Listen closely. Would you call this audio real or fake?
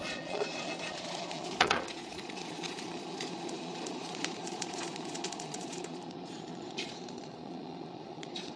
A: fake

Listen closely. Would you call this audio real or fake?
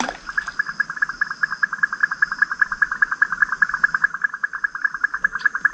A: real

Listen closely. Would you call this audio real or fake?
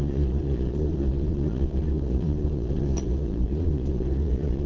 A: fake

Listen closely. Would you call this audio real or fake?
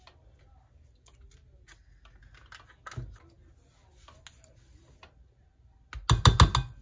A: real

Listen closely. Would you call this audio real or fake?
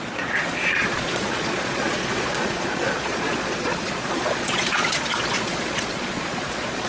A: fake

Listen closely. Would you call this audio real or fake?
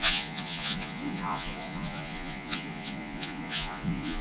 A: fake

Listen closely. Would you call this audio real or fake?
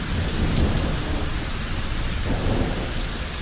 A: real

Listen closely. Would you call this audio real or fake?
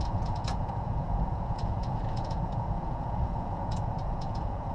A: fake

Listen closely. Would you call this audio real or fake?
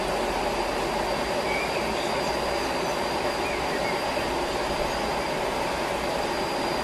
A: real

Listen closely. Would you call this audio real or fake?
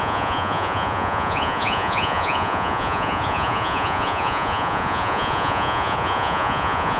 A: fake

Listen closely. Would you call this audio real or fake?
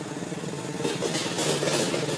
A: real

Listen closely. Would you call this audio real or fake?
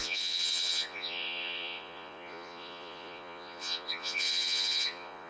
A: fake